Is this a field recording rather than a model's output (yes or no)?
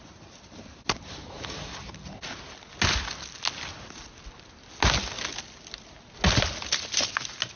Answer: yes